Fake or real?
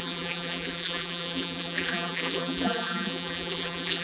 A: fake